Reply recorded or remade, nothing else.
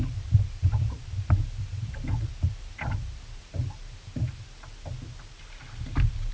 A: recorded